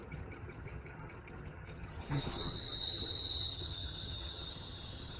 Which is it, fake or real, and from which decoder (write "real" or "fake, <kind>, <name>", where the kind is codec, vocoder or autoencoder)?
fake, vocoder, HiFi-GAN